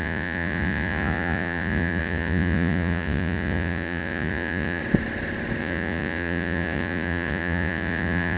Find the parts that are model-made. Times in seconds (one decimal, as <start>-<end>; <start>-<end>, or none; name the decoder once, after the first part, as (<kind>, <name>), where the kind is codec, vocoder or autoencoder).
0.0-4.8 (vocoder, Vocos); 5.6-8.4